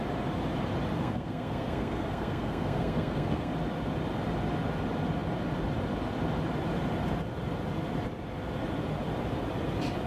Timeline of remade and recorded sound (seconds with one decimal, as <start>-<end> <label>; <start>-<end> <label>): 0.0-1.0 recorded; 1.0-3.5 remade; 3.5-10.1 recorded